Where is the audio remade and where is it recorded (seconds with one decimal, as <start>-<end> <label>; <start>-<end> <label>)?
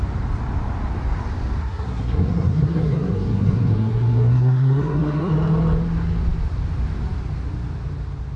0.0-1.6 recorded; 1.6-5.3 remade; 5.3-8.4 recorded